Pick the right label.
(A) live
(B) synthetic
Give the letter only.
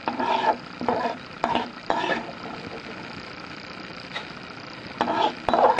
A